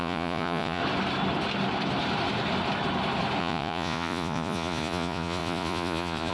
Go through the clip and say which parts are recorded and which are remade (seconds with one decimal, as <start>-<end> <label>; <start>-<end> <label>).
0.0-0.8 remade; 0.8-3.4 recorded; 3.4-6.3 remade